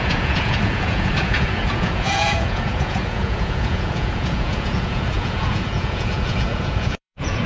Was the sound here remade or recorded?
remade